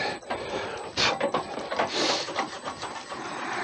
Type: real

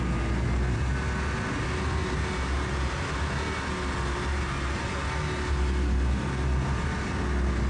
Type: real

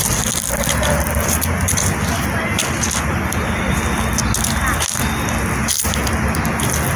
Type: real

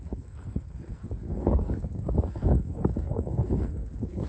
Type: fake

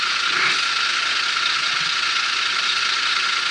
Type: real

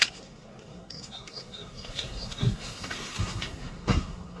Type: fake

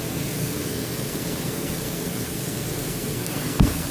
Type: fake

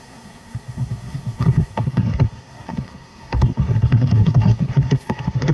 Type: fake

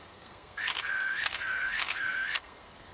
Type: fake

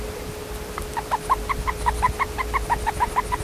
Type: real